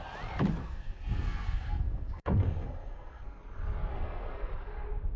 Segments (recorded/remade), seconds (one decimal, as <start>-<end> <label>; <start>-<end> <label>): 0.0-0.6 recorded; 0.6-3.4 remade; 3.4-3.9 recorded; 3.9-4.5 remade; 4.5-5.2 recorded